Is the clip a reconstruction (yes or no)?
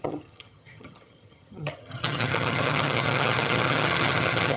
yes